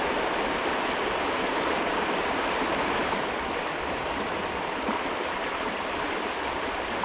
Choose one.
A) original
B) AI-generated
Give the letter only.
A